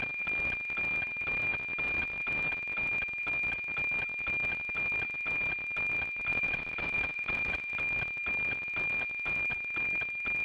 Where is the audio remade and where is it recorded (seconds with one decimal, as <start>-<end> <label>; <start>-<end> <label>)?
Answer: 0.0-6.3 recorded; 6.3-7.8 remade; 7.8-10.4 recorded